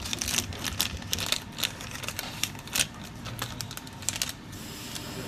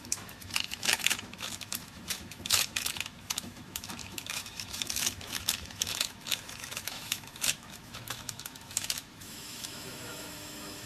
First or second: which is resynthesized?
second